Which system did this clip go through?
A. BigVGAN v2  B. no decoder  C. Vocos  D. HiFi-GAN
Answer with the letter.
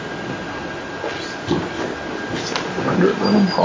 B